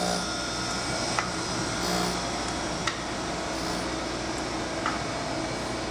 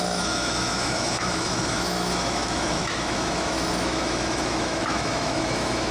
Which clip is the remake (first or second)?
second